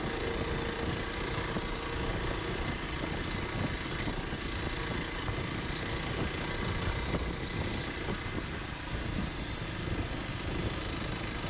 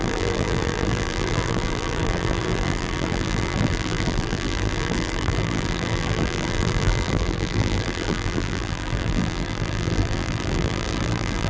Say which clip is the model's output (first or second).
second